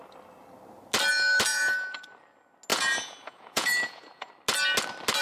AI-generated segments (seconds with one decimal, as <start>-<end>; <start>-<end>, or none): 1.5-2.0; 2.7-4.3